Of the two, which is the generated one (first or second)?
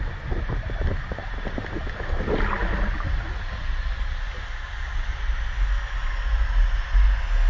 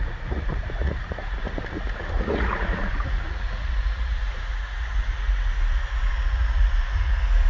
second